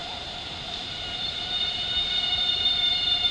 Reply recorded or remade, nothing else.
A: remade